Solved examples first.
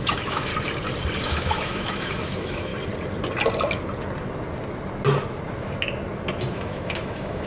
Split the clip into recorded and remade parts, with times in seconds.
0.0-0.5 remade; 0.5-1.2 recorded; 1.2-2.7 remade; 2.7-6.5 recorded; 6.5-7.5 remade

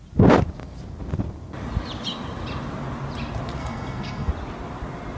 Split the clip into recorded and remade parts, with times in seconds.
0.0-3.6 recorded; 3.6-4.3 remade; 4.3-5.2 recorded

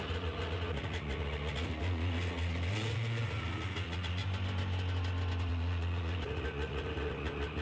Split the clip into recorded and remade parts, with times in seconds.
0.0-4.2 remade; 4.2-5.5 recorded; 5.5-7.6 remade

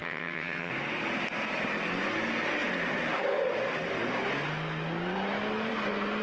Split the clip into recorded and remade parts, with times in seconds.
0.0-0.7 remade; 0.7-6.2 recorded

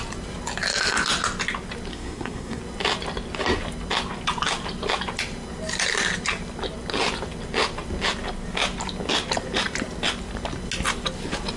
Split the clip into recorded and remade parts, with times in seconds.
0.0-1.9 recorded; 1.9-2.6 remade; 2.6-11.6 recorded